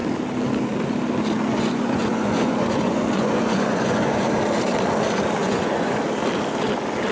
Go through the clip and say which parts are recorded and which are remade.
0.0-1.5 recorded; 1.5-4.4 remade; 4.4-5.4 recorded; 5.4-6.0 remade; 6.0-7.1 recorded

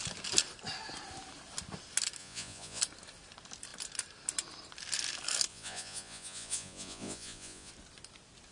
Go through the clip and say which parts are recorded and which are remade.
0.0-2.2 recorded; 2.2-2.8 remade; 2.8-5.5 recorded; 5.5-7.7 remade; 7.7-8.5 recorded

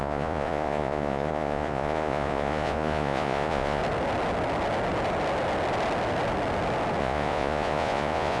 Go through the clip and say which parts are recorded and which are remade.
0.0-3.8 remade; 3.8-7.0 recorded; 7.0-8.4 remade

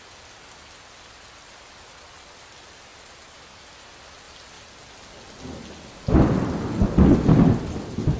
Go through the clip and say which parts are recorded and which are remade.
0.0-8.2 recorded

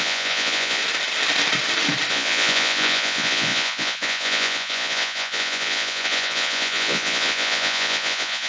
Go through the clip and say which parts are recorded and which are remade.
0.0-0.8 remade; 0.8-2.1 recorded; 2.1-8.5 remade

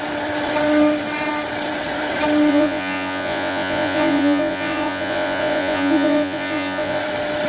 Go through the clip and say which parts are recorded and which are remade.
0.0-2.5 recorded; 2.5-7.0 remade; 7.0-7.5 recorded

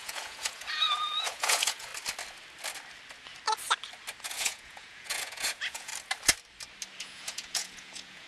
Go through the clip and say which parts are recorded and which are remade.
0.0-1.9 remade; 1.9-4.2 recorded; 4.2-5.9 remade; 5.9-7.0 recorded; 7.0-8.3 remade

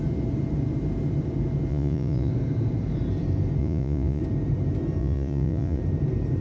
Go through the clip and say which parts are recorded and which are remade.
0.0-1.7 recorded; 1.7-2.3 remade; 2.3-3.6 recorded; 3.6-4.2 remade; 4.2-5.0 recorded; 5.0-5.8 remade; 5.8-6.4 recorded